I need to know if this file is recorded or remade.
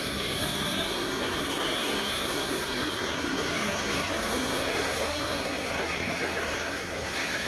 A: remade